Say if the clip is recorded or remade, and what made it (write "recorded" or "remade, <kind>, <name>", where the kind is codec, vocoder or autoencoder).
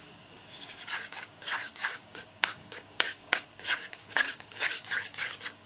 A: remade, codec, DAC